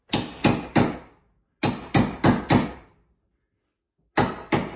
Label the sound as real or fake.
real